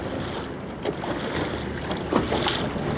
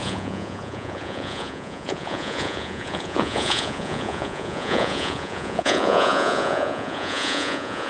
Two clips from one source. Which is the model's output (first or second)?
second